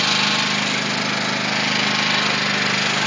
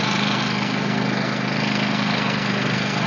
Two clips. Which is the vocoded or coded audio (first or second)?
second